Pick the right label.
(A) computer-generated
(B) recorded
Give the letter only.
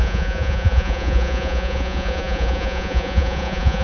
A